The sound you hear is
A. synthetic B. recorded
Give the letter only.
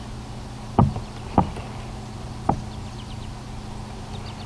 B